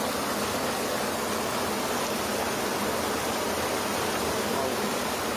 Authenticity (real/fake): real